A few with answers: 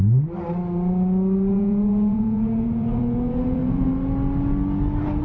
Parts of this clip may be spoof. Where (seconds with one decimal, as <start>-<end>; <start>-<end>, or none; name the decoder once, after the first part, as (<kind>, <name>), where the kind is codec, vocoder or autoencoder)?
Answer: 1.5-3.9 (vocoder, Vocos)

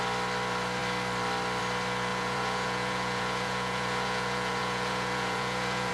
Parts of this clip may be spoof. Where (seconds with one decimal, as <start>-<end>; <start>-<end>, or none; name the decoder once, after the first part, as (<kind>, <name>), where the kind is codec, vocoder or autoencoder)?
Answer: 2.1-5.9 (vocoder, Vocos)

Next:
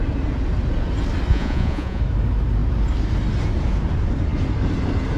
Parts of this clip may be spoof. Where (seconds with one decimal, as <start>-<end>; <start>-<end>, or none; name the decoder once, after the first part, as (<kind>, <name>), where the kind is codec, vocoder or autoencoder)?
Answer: 1.3-2.0 (vocoder, Vocos)

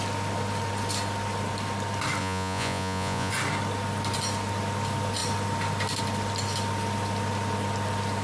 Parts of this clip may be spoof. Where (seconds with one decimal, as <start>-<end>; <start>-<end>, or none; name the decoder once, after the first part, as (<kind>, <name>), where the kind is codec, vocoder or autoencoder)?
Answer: 2.2-3.3 (vocoder, Vocos)

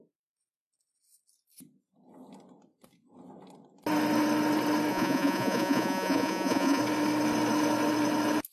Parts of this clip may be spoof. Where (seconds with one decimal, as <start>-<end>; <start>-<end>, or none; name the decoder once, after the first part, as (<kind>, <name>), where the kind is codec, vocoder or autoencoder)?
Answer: 4.9-6.8 (vocoder, Vocos)

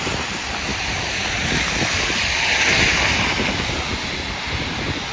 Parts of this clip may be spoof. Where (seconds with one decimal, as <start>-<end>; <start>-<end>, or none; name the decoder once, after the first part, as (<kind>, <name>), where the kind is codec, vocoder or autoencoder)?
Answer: none